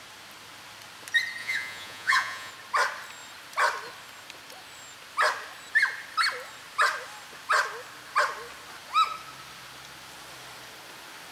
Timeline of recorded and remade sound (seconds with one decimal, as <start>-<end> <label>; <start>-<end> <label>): 0.0-1.4 recorded; 1.4-2.5 remade; 2.5-11.3 recorded